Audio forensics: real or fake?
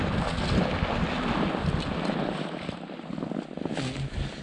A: real